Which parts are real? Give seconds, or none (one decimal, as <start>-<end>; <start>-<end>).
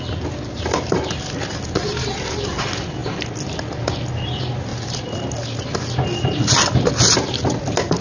0.0-8.0